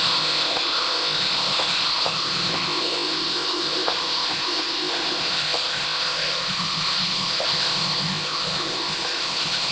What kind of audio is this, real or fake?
fake